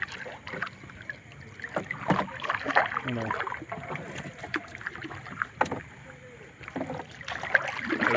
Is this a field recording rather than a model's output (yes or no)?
yes